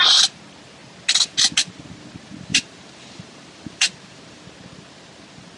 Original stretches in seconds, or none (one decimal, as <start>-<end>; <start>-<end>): 0.0-2.5; 4.4-5.6

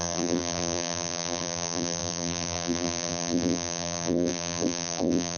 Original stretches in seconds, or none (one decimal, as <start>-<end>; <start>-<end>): none

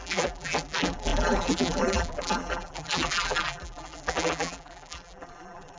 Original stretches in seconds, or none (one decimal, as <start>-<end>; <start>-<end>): none

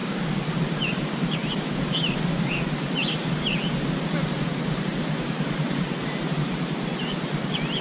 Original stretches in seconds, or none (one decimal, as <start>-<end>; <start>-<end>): 0.0-3.0; 3.6-4.9; 6.5-7.8

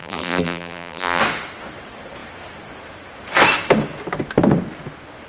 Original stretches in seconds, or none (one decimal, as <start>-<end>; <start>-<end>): 1.2-5.3